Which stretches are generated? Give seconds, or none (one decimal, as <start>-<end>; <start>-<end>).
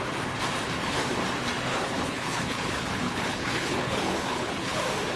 1.7-4.8